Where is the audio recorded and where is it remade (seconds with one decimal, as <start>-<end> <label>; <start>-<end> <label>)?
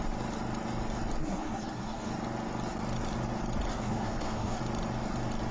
0.0-1.2 recorded; 1.2-2.1 remade; 2.1-3.7 recorded; 3.7-4.6 remade; 4.6-5.5 recorded